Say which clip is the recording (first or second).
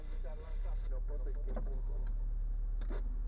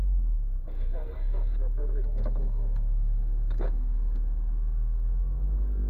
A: first